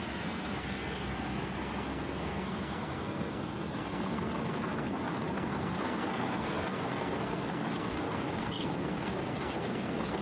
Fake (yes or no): yes